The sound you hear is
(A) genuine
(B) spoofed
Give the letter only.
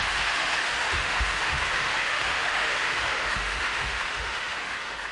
B